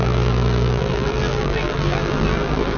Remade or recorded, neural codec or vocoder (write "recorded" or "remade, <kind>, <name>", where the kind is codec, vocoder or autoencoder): remade, vocoder, BigVGAN v2